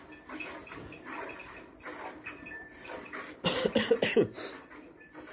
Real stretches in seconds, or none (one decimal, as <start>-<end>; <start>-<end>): 0.0-5.3